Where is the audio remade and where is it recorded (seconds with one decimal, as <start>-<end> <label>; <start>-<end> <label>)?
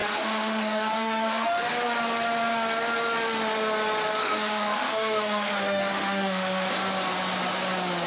0.0-1.7 remade; 1.7-4.2 recorded; 4.2-6.7 remade; 6.7-8.1 recorded